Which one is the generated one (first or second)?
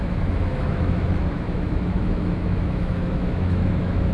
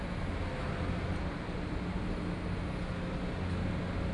first